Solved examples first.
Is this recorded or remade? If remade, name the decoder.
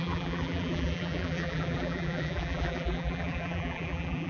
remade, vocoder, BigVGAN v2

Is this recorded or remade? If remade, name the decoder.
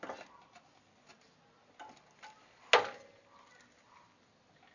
recorded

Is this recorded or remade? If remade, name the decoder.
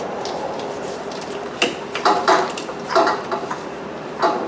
remade, vocoder, BigVGAN v2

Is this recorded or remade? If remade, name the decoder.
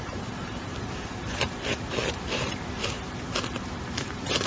remade, vocoder, BigVGAN v2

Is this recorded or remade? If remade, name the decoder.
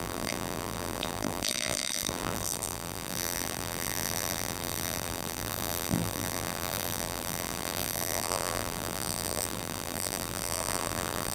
remade, vocoder, BigVGAN v2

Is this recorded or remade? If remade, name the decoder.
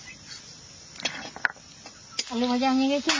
recorded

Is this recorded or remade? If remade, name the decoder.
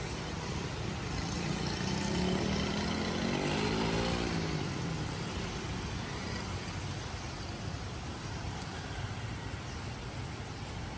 recorded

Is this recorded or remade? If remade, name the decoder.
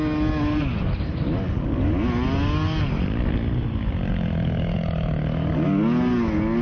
recorded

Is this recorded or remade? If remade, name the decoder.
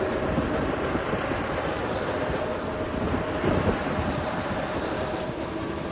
remade, vocoder, BigVGAN v2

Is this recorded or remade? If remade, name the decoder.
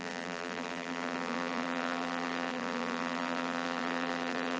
remade, vocoder, BigVGAN v2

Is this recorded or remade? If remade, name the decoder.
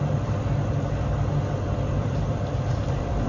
remade, vocoder, BigVGAN v2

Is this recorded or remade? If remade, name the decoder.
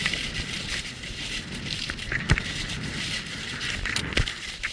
remade, vocoder, BigVGAN v2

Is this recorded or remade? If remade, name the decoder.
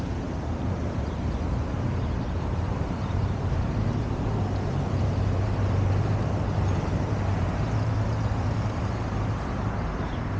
remade, vocoder, BigVGAN v2